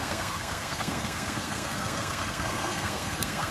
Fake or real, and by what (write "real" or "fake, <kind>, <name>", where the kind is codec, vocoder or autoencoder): fake, codec, SNAC